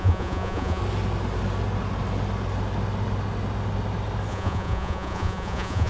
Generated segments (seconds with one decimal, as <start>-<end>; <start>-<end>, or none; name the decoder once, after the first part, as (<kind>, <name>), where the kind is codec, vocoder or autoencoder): 0.0-0.8 (vocoder, Vocos); 4.3-5.9